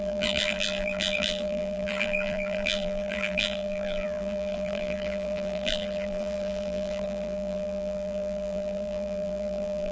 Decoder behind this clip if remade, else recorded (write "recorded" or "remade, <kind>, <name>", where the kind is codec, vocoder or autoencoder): remade, vocoder, BigVGAN v2